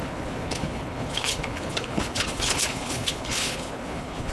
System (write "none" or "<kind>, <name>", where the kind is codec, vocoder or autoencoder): codec, HILCodec